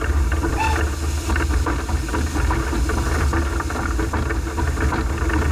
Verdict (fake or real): real